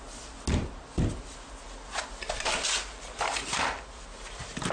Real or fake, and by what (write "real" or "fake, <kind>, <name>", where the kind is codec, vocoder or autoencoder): real